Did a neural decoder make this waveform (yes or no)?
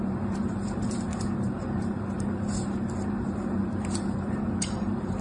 yes